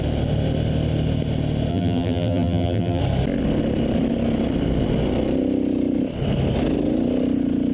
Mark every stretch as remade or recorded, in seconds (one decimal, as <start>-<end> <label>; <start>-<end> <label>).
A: 0.0-1.7 recorded; 1.7-3.0 remade; 3.0-7.7 recorded